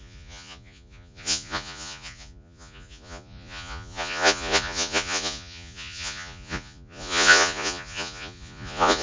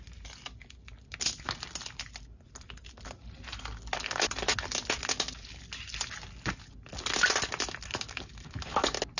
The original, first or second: second